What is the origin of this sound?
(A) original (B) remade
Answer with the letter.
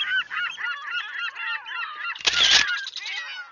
A